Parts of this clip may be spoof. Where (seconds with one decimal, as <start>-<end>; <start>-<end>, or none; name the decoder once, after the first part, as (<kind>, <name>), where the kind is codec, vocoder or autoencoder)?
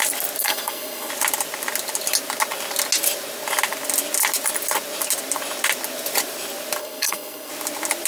0.4-1.1 (codec, SNAC); 6.8-7.5